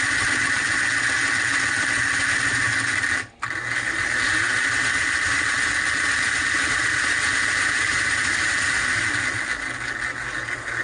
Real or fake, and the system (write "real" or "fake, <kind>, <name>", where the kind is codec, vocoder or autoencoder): real